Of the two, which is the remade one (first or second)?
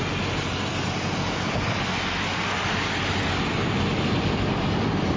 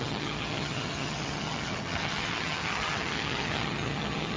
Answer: second